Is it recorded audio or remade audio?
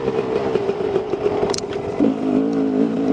remade